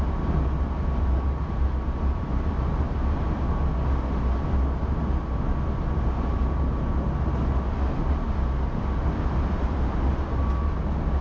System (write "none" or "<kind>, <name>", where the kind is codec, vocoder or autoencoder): none